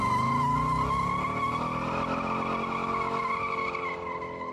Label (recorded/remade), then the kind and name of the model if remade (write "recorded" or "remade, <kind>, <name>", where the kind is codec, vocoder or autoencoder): recorded